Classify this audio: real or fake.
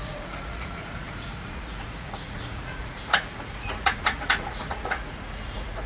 fake